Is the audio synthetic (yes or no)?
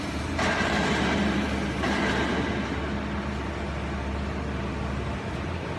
no